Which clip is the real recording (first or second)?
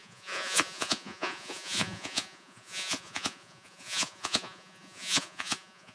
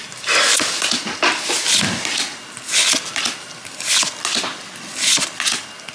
second